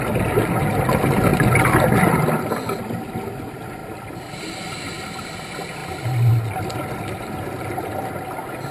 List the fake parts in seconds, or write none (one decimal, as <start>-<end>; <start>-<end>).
none